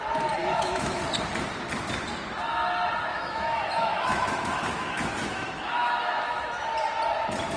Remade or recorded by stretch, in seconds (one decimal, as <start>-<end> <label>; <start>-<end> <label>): 0.0-0.4 recorded; 0.4-1.0 remade; 1.0-3.1 recorded; 3.1-6.7 remade; 6.7-7.6 recorded